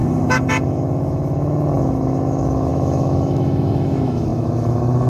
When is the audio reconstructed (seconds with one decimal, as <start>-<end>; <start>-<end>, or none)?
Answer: 0.0-5.1